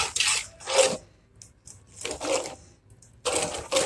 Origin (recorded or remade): recorded